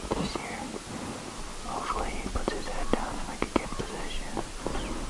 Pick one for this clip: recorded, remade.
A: recorded